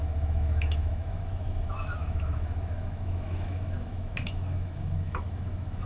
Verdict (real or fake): fake